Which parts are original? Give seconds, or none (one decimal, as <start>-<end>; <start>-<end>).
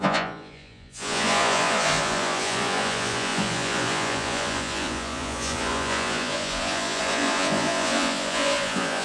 none